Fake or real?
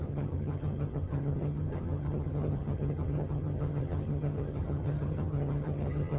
fake